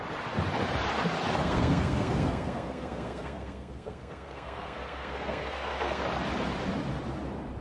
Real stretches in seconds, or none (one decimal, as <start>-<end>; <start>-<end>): 0.0-1.4; 6.0-7.6